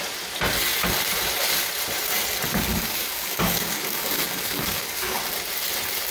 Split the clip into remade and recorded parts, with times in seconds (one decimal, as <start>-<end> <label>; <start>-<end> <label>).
0.0-2.5 recorded; 2.5-5.2 remade; 5.2-6.1 recorded